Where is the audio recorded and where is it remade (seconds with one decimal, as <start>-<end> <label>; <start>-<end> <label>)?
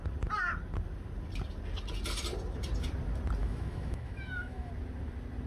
0.0-3.4 recorded; 3.4-4.7 remade; 4.7-5.5 recorded